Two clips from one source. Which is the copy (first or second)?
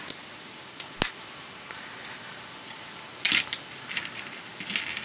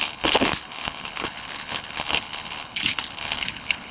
second